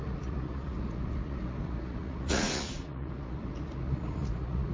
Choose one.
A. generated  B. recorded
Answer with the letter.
A